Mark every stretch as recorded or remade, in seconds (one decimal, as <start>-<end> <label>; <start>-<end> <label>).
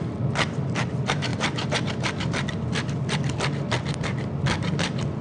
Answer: 0.0-5.2 remade